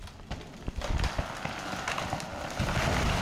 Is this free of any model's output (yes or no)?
yes